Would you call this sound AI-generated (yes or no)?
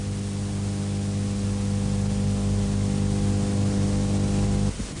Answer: no